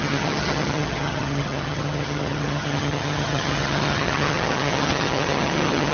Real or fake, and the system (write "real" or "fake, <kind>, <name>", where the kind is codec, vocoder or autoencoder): fake, vocoder, HiFi-GAN